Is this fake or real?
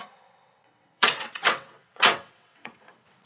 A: fake